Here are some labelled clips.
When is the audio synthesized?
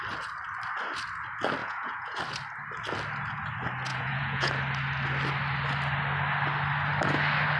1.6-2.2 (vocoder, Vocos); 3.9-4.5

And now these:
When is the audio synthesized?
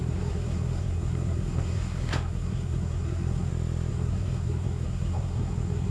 0.0-3.5 (codec, SNAC); 3.9-5.9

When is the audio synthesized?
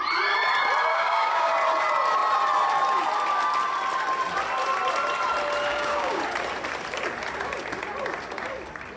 0.9-1.5 (codec, DAC); 5.7-6.2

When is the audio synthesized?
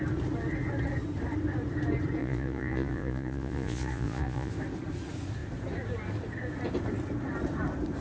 2.2-4.5 (vocoder, Vocos)